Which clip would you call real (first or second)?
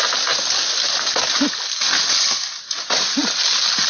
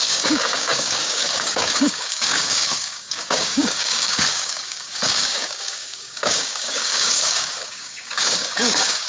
first